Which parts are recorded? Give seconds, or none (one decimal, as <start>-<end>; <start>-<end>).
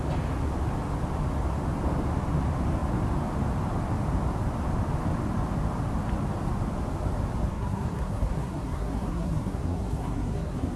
0.0-7.5